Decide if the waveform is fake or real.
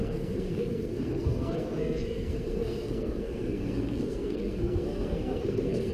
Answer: fake